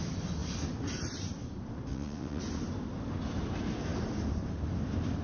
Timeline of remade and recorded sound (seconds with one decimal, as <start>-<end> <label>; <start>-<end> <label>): 0.0-1.9 recorded; 1.9-2.4 remade; 2.4-5.2 recorded